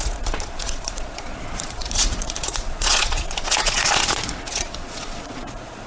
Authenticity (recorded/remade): remade